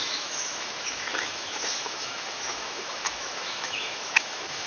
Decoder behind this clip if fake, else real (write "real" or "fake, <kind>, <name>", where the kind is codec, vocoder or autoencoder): fake, autoencoder, DAC-VAE